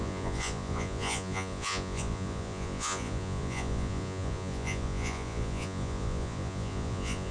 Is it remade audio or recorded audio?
remade